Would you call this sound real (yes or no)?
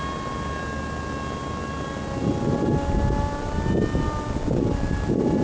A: yes